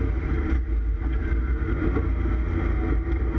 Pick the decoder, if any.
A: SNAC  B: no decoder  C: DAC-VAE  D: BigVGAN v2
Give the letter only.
B